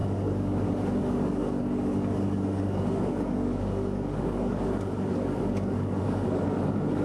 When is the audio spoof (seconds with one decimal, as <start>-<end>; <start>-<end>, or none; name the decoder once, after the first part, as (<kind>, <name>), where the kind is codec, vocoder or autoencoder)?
0.0-7.0 (codec, DAC)